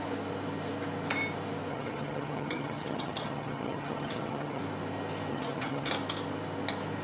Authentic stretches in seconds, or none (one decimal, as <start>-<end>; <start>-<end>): 0.0-1.7; 4.6-5.3; 5.9-7.0